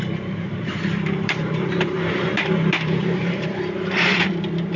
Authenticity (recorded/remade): remade